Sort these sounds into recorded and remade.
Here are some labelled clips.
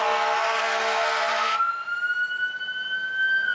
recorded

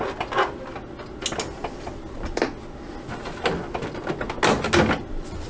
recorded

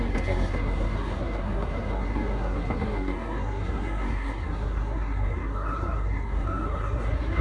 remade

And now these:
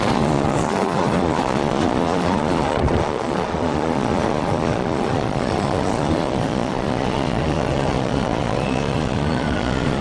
remade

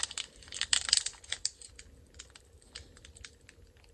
recorded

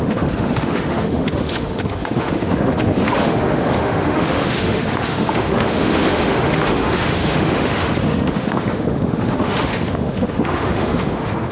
remade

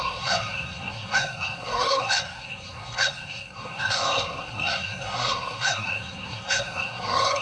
remade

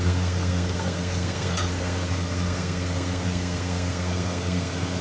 remade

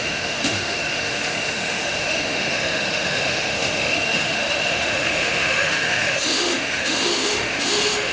remade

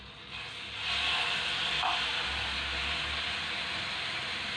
recorded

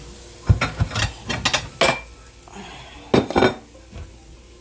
recorded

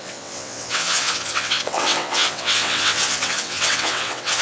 remade